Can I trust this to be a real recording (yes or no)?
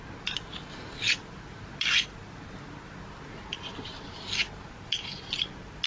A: yes